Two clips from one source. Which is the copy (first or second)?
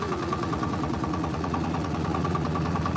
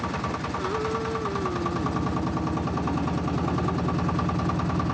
first